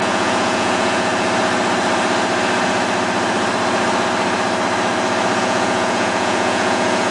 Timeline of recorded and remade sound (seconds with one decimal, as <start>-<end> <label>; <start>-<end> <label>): 0.0-1.1 remade; 1.1-5.4 recorded; 5.4-7.1 remade